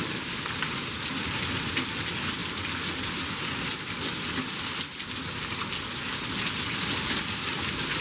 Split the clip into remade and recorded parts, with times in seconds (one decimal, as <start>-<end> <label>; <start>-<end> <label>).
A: 0.0-8.0 recorded